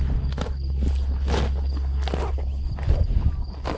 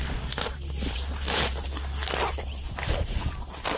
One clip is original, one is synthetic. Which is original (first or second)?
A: first